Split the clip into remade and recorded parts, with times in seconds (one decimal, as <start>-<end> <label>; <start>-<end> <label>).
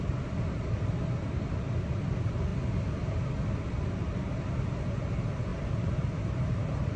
0.0-5.5 recorded; 5.5-7.0 remade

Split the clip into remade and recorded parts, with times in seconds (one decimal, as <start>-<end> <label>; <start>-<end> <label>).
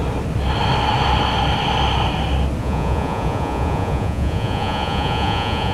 0.0-2.6 recorded; 2.6-5.7 remade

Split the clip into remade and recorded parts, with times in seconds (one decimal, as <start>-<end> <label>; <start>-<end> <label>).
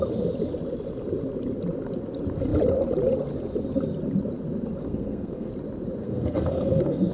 0.0-4.8 recorded; 4.8-5.5 remade; 5.5-6.0 recorded; 6.0-7.1 remade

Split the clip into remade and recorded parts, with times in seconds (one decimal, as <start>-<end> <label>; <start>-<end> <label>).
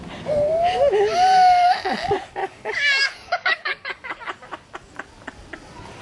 0.0-2.4 recorded; 2.4-4.2 remade; 4.2-6.0 recorded